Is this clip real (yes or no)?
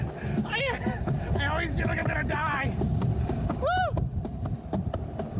yes